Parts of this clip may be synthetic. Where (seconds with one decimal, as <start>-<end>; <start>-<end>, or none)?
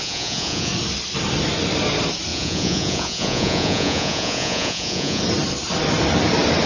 0.0-0.7; 2.3-5.2